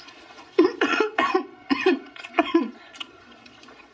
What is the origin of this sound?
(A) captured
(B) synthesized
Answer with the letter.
B